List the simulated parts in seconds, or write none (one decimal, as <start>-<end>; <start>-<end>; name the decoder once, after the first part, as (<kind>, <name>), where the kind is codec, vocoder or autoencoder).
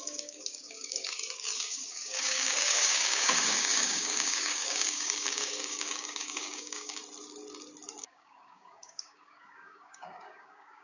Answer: 0.0-7.0 (codec, DAC); 8.0-10.8